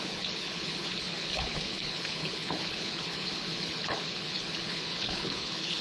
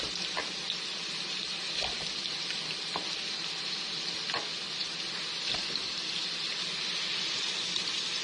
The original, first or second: second